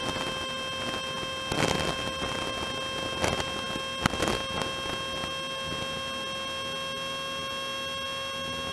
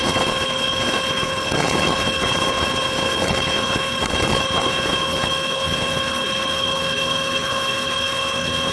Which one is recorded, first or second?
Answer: first